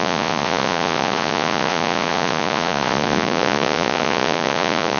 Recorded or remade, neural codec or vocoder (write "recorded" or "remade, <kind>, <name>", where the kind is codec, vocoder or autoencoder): remade, vocoder, Vocos